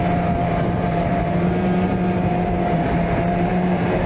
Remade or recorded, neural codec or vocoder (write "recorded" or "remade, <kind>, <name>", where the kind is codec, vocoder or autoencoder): remade, vocoder, BigVGAN v2